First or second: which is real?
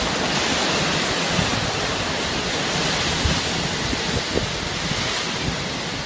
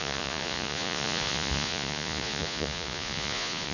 first